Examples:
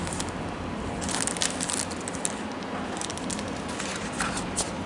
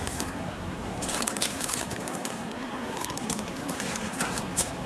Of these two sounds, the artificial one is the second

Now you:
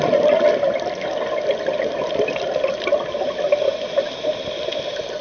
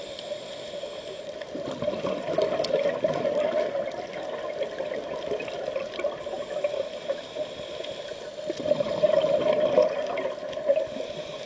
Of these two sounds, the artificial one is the second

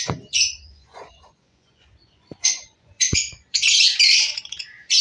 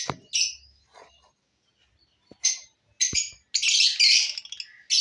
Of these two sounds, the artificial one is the first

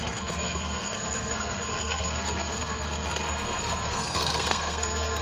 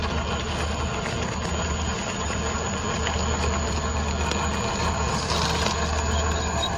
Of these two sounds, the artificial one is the first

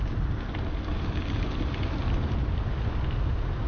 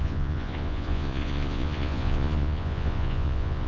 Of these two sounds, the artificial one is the second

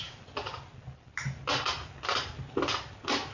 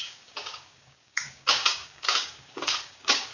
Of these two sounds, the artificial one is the second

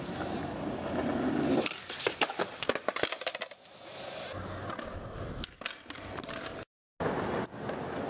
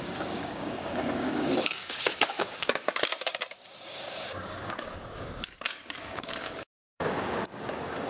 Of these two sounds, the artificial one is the second